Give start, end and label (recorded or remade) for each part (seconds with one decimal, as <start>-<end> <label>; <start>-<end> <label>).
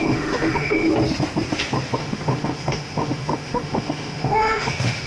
0.0-0.9 remade; 0.9-2.0 recorded; 2.0-5.1 remade